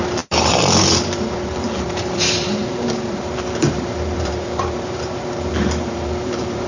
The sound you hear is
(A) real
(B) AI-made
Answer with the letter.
B